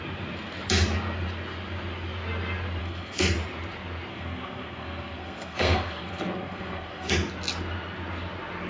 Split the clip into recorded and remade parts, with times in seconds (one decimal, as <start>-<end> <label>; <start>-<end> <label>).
0.0-2.8 recorded; 2.8-3.3 remade; 3.3-4.1 recorded; 4.1-7.1 remade; 7.1-8.7 recorded